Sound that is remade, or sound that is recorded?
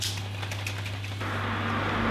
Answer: recorded